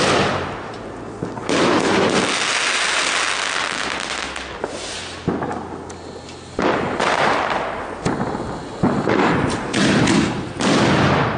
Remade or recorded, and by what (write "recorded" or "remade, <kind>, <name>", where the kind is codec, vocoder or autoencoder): recorded